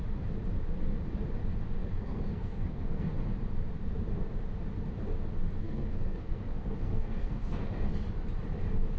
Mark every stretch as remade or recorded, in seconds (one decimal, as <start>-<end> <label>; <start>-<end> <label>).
0.0-1.8 recorded; 1.8-3.1 remade; 3.1-5.6 recorded; 5.6-7.7 remade; 7.7-9.0 recorded

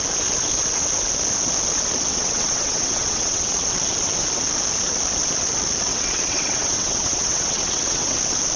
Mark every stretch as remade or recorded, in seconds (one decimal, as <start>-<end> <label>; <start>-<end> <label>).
0.0-2.1 recorded; 2.1-3.7 remade; 3.7-5.9 recorded; 5.9-8.2 remade; 8.2-8.6 recorded

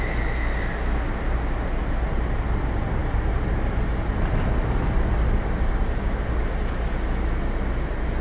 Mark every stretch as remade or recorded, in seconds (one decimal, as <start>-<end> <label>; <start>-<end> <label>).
0.0-8.2 recorded